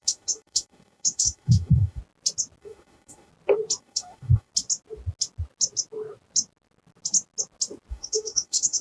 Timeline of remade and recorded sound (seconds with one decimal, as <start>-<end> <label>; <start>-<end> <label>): 0.0-2.0 remade; 2.0-2.6 recorded; 2.6-3.3 remade; 3.3-3.8 recorded; 3.8-4.5 remade; 4.5-7.9 recorded; 7.9-8.8 remade

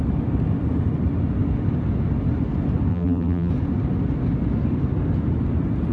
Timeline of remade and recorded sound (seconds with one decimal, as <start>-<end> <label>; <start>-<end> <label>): 0.0-2.9 recorded; 2.9-3.5 remade; 3.5-5.9 recorded

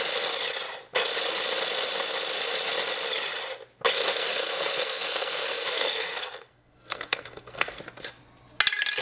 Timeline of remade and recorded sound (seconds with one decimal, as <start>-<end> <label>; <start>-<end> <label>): 0.0-4.1 recorded; 4.1-7.8 remade; 7.8-9.0 recorded

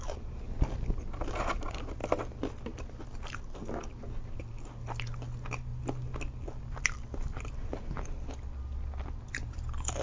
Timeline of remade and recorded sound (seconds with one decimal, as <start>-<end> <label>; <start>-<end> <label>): 0.0-10.0 recorded

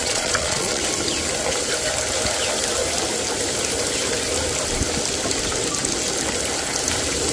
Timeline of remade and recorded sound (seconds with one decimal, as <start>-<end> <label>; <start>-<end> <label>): 0.0-0.8 remade; 0.8-7.3 recorded

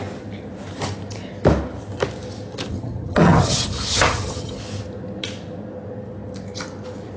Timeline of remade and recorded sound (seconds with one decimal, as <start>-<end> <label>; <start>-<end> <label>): 0.0-2.7 recorded; 2.7-4.6 remade; 4.6-7.2 recorded

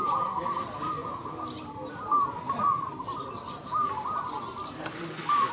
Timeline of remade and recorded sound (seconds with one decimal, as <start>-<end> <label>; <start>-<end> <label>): 0.0-5.5 recorded